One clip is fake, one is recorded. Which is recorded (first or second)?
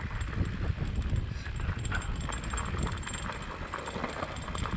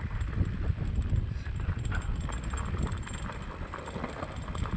first